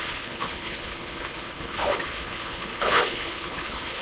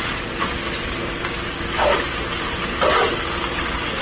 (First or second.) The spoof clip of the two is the first